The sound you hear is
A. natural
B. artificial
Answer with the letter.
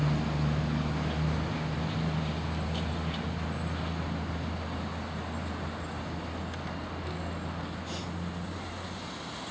A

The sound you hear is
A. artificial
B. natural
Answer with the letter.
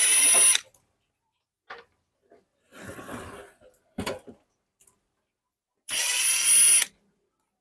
B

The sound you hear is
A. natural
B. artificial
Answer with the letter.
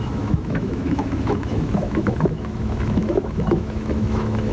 B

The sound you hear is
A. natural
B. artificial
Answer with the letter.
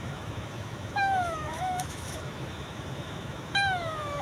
B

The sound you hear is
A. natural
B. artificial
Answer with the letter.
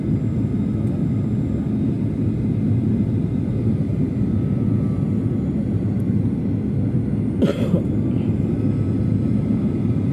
A